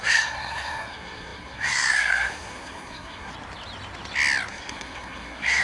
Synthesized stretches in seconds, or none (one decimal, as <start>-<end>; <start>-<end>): 0.0-3.3; 4.5-5.6